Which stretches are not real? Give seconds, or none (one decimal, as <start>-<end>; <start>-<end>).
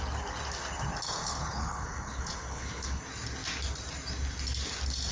1.2-3.0